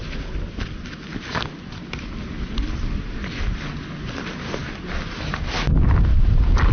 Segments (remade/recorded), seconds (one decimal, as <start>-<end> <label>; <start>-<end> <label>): 0.0-6.7 recorded